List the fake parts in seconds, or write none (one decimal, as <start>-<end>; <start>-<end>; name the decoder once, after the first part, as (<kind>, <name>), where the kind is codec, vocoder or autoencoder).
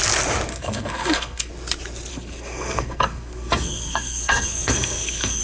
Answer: 0.5-1.5 (codec, SNAC); 2.1-5.4